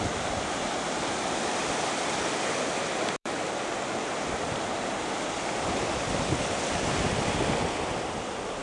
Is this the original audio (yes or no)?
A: no